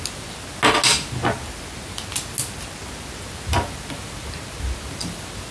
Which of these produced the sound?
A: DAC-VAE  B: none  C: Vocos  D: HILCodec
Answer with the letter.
B